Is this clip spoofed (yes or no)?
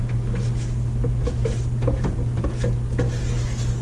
no